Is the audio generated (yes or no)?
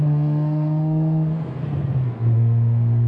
yes